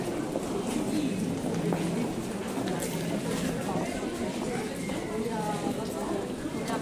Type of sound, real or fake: fake